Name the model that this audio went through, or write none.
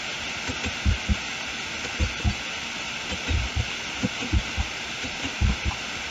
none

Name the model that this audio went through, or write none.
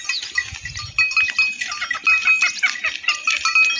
none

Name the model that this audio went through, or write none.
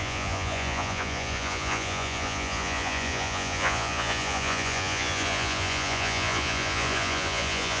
vocoder, Vocos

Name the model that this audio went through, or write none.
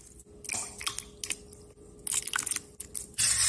none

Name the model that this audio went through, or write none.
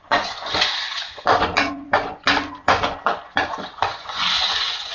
vocoder, Vocos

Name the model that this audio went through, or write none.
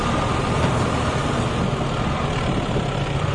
none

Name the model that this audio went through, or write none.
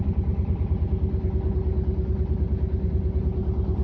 none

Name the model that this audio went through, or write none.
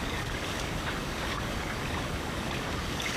codec, DAC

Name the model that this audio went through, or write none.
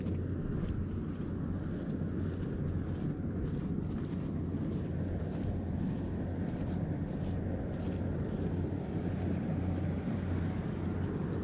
none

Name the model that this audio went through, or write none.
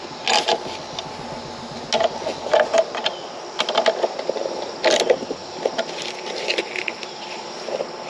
none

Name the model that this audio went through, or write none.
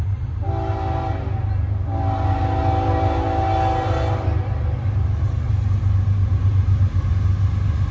none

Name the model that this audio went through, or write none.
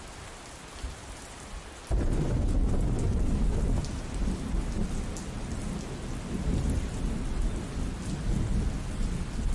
none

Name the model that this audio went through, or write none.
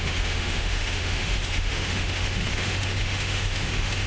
autoencoder, DAC-VAE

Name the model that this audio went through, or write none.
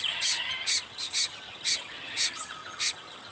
vocoder, HiFi-GAN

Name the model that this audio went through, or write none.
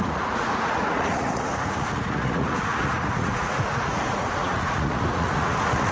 vocoder, Vocos